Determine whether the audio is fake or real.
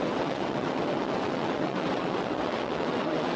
fake